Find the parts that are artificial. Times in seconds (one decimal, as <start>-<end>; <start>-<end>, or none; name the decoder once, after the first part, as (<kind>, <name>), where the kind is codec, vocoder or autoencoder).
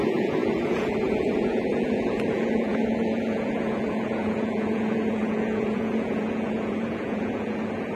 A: 0.0-8.0 (vocoder, Vocos)